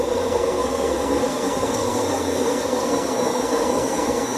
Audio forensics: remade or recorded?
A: remade